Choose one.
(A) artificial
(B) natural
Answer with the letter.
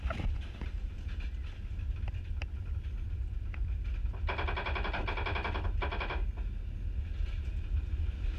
B